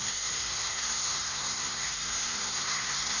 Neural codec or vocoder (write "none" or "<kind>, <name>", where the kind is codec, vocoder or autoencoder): codec, SNAC